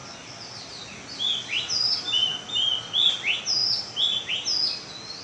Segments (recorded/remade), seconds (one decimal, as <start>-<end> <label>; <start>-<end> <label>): 0.0-5.2 recorded